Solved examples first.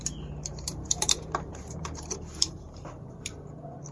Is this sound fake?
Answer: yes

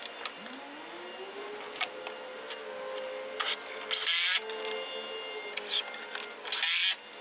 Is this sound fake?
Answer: no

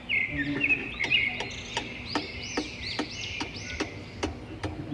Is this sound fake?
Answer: no